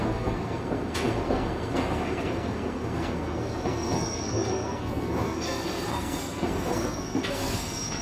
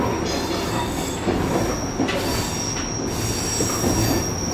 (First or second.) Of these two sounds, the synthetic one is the first